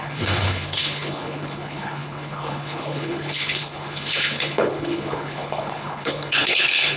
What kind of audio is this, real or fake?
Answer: fake